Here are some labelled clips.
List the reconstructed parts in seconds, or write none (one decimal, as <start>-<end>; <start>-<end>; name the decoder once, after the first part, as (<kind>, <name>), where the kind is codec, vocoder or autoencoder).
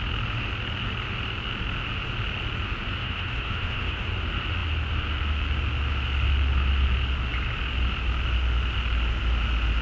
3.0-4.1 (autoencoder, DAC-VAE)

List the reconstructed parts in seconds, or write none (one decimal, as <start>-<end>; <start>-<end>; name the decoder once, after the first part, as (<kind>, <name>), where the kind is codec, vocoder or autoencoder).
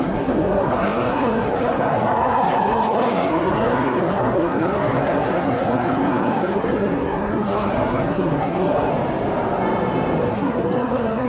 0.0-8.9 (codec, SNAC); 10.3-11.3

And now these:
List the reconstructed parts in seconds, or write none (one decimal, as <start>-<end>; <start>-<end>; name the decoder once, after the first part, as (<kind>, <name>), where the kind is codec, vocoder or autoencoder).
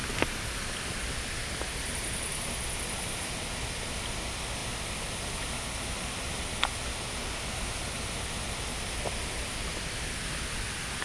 none